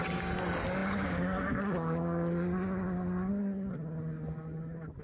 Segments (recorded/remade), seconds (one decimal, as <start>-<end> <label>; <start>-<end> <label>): 0.0-5.0 recorded